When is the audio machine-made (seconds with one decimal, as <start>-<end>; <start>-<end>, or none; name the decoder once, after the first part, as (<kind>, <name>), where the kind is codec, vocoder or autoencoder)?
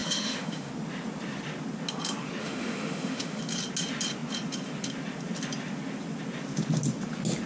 0.0-0.7 (autoencoder, DAC-VAE); 2.4-3.4